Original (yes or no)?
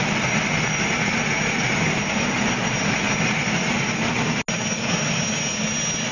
yes